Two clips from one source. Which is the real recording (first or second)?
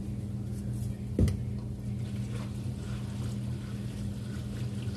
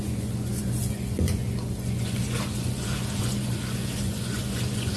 first